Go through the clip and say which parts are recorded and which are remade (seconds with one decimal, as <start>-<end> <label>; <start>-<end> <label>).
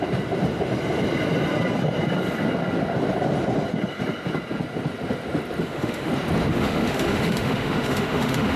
0.0-5.6 recorded; 5.6-6.1 remade; 6.1-6.5 recorded; 6.5-8.6 remade